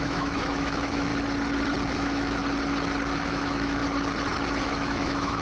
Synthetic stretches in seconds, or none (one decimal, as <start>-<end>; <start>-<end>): 0.0-1.1; 1.9-2.4; 3.2-3.8; 4.6-5.4